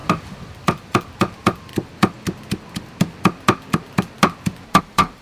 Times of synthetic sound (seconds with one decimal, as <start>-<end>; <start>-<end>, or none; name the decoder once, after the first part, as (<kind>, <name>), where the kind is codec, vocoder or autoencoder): 0.0-1.7 (vocoder, BigVGAN v2); 4.8-5.2